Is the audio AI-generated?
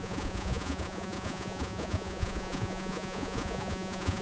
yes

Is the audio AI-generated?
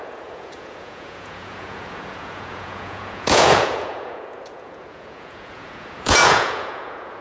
yes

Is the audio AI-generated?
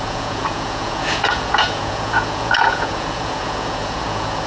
yes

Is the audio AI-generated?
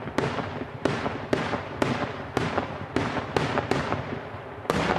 no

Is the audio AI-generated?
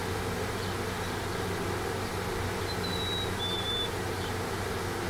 no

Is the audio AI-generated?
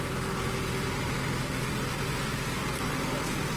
no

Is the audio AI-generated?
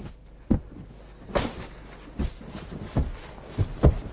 no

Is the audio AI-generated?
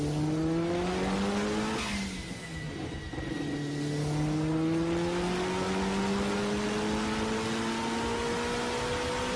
no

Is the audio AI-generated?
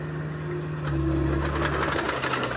no